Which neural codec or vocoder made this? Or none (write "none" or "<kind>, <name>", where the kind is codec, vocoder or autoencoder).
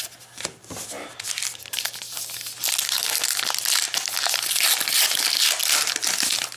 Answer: none